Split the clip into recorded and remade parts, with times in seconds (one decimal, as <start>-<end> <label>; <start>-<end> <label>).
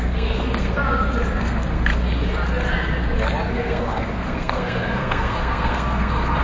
0.0-0.8 remade; 0.8-1.4 recorded; 1.4-1.9 remade; 1.9-3.5 recorded; 3.5-6.4 remade